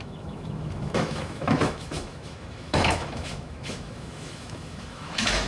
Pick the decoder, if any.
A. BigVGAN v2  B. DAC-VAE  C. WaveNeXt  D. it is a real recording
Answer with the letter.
B